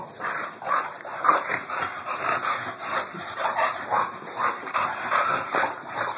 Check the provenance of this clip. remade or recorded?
remade